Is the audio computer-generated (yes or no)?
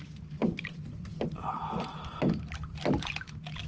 no